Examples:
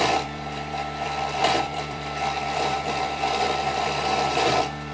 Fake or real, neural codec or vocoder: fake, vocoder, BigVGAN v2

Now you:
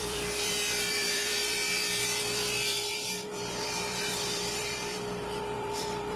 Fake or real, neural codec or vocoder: fake, vocoder, BigVGAN v2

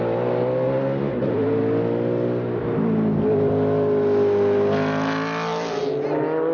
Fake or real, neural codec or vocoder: real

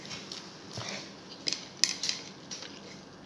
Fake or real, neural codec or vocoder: real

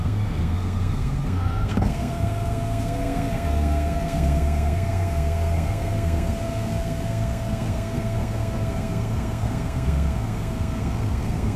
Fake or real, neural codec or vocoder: fake, codec, SNAC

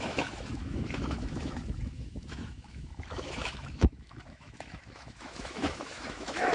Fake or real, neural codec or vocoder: fake, autoencoder, DAC-VAE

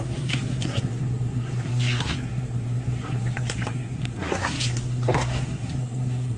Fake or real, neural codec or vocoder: fake, codec, SNAC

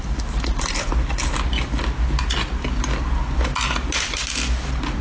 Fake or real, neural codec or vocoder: real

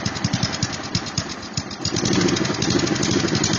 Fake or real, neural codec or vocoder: real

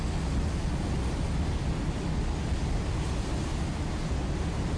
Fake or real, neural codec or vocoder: real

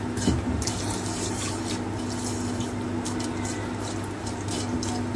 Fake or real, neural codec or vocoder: real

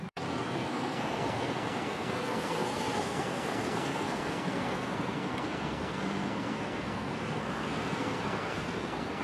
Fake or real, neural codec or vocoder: fake, codec, SNAC